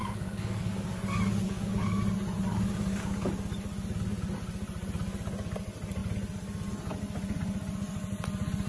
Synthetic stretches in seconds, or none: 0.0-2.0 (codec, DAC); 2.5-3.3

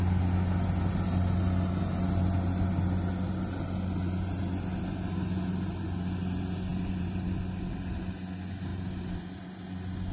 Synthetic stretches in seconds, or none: 6.7-7.3 (vocoder, BigVGAN v2); 8.7-9.6

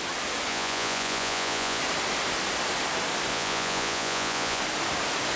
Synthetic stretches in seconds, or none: 0.5-1.8 (vocoder, Vocos); 3.3-4.6

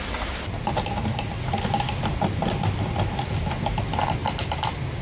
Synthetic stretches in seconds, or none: none

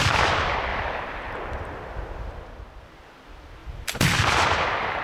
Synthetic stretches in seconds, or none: 0.7-1.3 (vocoder, BigVGAN v2); 3.6-5.0

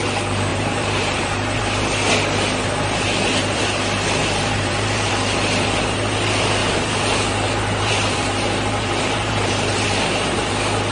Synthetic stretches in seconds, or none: 0.5-1.6 (vocoder, BigVGAN v2); 4.2-5.1; 6.6-10.5

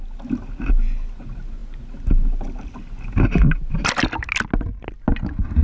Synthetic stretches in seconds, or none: none

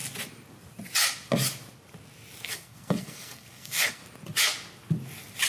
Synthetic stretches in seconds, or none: 2.5-4.0 (codec, SNAC)